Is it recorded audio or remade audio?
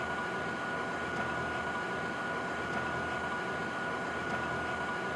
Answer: recorded